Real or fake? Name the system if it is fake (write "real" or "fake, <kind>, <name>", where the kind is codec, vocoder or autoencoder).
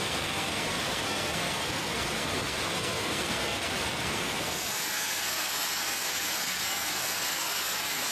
fake, codec, SNAC